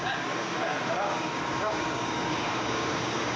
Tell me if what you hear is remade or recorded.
remade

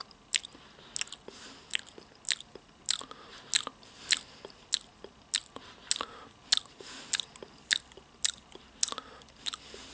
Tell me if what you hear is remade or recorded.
recorded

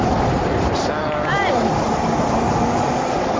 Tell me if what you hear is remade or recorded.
recorded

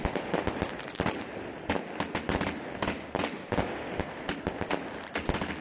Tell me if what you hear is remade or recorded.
recorded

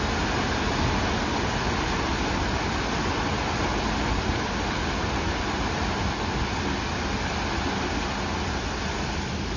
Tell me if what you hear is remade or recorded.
recorded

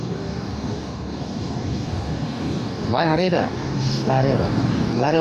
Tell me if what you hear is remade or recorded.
remade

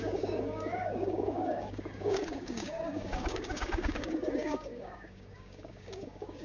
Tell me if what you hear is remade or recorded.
remade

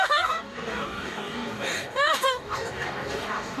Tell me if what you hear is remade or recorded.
remade